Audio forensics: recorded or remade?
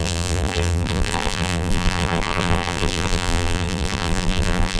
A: remade